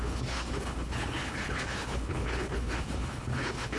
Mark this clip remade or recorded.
remade